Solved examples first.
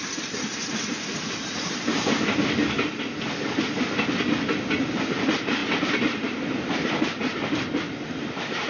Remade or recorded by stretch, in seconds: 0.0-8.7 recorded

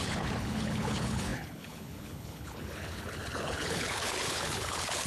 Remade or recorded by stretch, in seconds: 0.0-5.1 remade